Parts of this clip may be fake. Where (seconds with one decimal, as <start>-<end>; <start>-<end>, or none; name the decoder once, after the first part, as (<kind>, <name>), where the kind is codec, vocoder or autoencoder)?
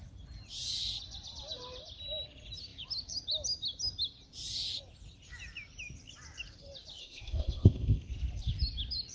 7.0-8.1 (codec, ZipCodec)